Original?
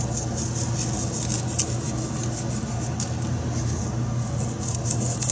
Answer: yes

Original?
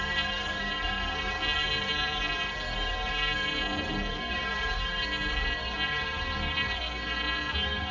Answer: no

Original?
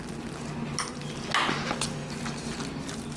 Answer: yes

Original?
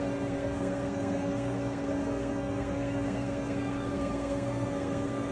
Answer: no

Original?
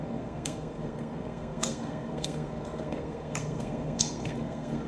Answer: no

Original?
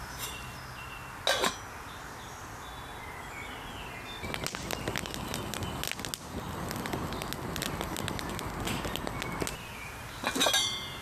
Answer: yes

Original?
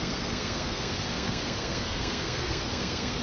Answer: no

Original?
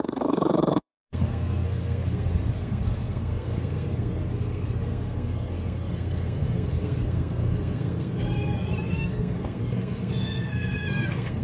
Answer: no